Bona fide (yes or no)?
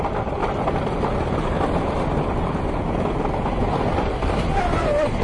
yes